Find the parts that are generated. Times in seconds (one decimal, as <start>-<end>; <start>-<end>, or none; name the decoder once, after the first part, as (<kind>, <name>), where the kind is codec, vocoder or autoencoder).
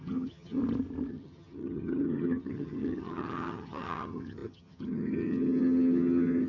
0.0-0.6 (vocoder, HiFi-GAN); 1.1-6.5